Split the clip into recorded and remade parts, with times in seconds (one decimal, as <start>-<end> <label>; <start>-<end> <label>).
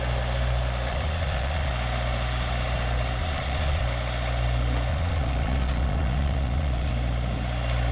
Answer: 0.0-0.9 recorded; 0.9-1.7 remade; 1.7-3.2 recorded; 3.2-3.8 remade; 3.8-4.9 recorded; 4.9-6.9 remade; 6.9-7.9 recorded